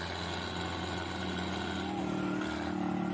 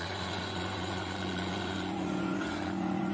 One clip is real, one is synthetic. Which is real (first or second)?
first